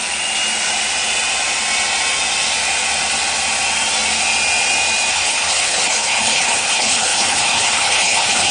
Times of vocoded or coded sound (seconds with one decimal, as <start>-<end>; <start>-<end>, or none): 5.1-8.5